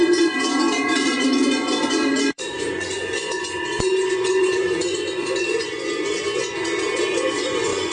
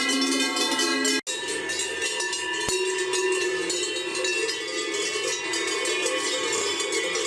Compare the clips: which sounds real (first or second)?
second